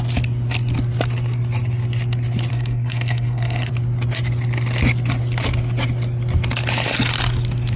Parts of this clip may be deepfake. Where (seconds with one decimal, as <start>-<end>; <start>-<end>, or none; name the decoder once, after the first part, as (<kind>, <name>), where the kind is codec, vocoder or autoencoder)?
2.5-3.7 (codec, SNAC)